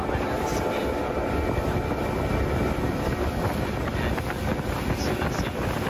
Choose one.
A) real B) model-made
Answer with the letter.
A